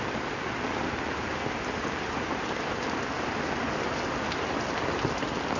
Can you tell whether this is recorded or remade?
recorded